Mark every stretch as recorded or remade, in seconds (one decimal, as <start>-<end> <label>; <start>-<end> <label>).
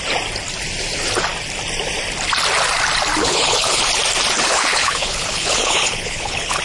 0.0-3.2 recorded; 3.2-3.8 remade; 3.8-4.5 recorded; 4.5-6.6 remade